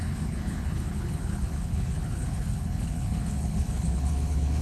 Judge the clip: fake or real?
fake